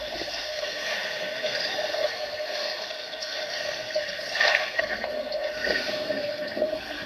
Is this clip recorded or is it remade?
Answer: remade